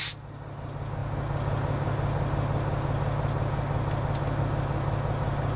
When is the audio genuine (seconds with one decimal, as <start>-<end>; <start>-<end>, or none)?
0.0-5.6